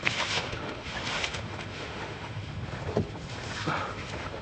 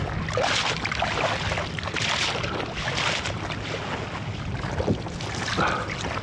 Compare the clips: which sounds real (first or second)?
second